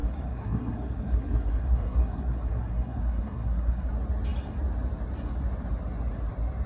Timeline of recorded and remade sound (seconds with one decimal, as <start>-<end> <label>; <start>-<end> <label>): 0.0-3.9 remade; 3.9-6.7 recorded